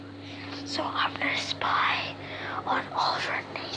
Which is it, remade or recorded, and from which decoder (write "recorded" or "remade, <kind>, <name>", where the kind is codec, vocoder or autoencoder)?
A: recorded